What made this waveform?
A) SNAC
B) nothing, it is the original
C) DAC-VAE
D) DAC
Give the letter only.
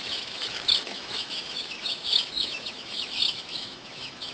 C